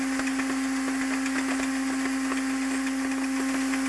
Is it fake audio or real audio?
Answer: real